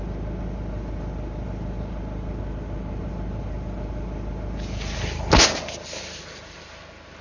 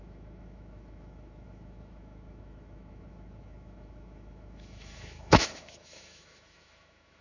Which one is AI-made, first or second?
second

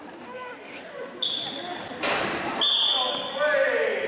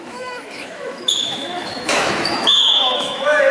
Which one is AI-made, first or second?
second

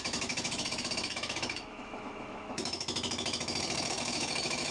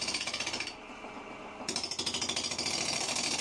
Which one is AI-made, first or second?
first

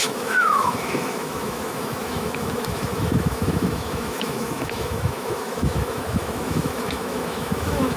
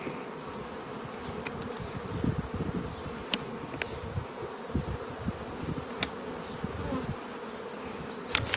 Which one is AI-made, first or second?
first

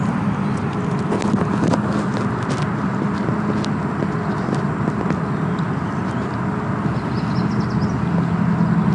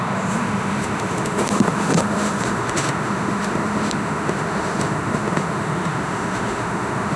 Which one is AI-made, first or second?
second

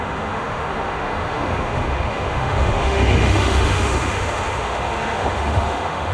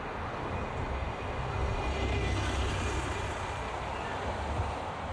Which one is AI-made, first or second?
first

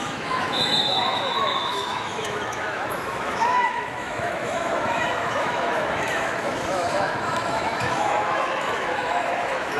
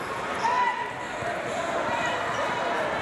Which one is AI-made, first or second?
first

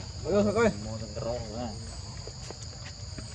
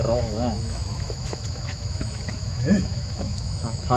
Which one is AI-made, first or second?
second